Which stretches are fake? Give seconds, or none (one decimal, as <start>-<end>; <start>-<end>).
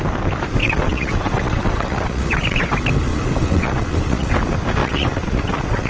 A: 0.6-2.7; 3.1-4.3; 4.8-5.9